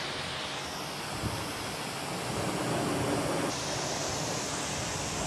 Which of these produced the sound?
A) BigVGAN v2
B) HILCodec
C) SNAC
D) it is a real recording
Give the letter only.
D